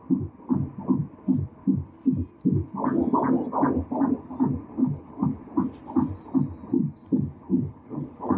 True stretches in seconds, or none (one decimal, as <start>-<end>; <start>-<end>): 0.0-4.8; 5.4-7.5